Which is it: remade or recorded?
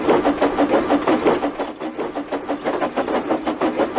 recorded